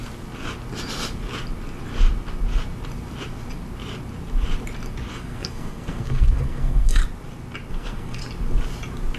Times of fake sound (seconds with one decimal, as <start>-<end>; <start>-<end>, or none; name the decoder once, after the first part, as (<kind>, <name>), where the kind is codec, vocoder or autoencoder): 5.1-7.0 (codec, SNAC); 7.7-8.2